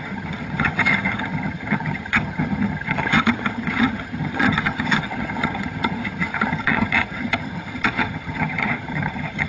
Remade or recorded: remade